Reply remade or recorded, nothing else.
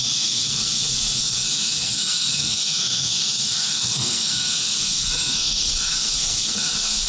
remade